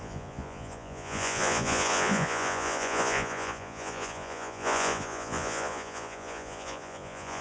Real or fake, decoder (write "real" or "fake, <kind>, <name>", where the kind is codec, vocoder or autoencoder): fake, vocoder, Vocos